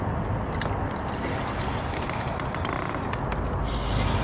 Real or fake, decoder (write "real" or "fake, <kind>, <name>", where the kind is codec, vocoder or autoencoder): real